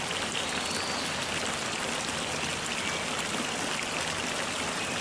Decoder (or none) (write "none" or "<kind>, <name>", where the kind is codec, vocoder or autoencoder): none